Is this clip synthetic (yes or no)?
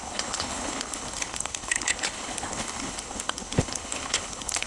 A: yes